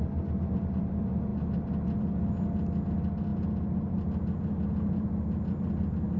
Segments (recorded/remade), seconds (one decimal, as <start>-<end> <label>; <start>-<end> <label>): 0.0-6.2 recorded